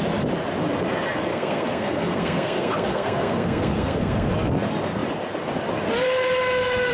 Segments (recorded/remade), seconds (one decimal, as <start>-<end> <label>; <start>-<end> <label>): 0.0-1.3 recorded; 1.3-4.3 remade; 4.3-6.9 recorded